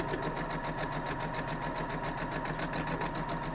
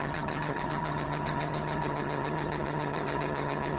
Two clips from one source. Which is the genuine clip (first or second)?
first